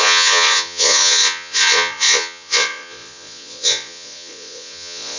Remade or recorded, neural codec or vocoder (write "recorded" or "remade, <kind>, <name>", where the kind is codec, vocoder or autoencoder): remade, vocoder, Vocos